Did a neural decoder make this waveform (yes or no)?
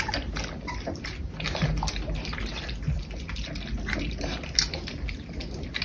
no